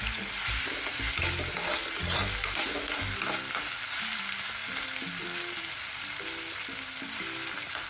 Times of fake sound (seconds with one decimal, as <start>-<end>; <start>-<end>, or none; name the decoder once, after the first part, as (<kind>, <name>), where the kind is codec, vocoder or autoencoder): none